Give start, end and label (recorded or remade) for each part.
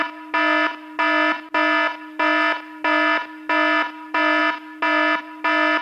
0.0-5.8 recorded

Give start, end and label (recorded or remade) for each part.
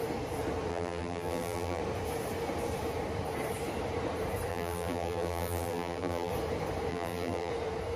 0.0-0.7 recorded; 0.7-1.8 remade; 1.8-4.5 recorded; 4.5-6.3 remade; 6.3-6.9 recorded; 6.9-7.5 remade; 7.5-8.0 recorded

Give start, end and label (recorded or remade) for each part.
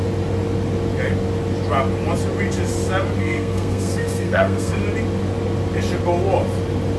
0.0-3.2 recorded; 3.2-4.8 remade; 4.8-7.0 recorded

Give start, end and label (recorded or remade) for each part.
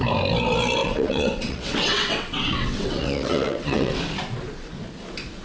0.0-0.8 recorded; 0.8-4.0 remade; 4.0-5.4 recorded